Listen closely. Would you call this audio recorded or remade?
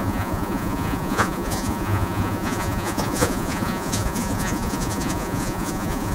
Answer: remade